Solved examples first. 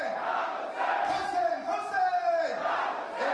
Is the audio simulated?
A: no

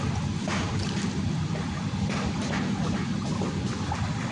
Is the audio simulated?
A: no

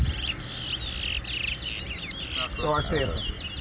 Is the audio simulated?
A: no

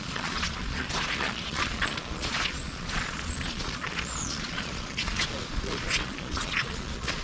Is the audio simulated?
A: yes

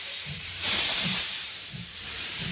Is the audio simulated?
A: yes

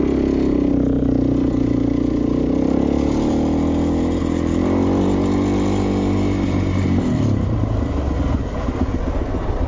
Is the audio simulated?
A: no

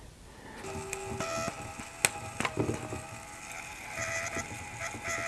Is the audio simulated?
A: no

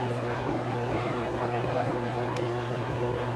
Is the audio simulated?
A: yes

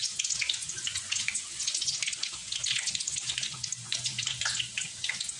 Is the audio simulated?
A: yes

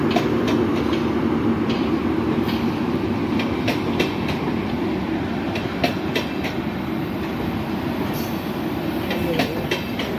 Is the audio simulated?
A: no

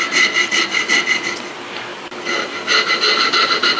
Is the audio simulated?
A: no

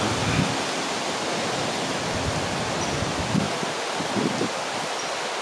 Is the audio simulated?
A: no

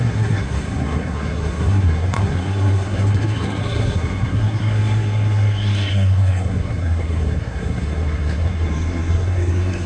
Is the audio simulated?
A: yes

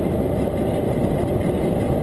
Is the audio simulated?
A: no